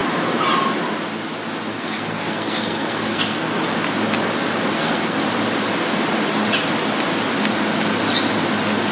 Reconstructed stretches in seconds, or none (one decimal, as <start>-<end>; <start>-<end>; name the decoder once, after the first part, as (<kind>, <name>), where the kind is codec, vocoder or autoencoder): 1.7-3.5 (codec, SNAC); 4.7-5.2

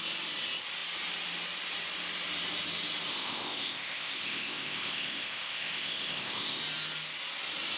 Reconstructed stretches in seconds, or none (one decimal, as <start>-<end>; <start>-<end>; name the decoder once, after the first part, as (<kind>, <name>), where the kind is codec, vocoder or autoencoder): 3.1-6.6 (codec, ZipCodec)

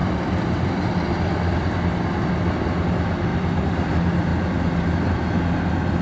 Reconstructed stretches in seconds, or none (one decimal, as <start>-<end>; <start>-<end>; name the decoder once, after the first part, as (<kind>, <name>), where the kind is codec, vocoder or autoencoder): 0.0-1.7 (vocoder, BigVGAN v2); 3.3-3.9

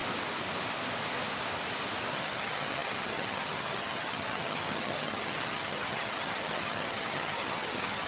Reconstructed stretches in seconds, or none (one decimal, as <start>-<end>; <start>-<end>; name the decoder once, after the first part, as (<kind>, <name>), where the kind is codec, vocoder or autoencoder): 2.1-8.1 (vocoder, HiFi-GAN)